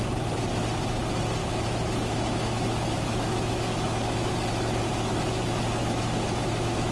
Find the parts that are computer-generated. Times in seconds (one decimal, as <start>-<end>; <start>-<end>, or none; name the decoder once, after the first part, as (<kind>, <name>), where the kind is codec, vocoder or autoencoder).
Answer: 1.4-4.3 (autoencoder, DAC-VAE); 5.8-6.9